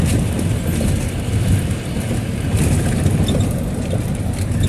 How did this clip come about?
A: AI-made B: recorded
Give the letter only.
B